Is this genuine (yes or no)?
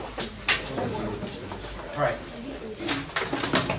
yes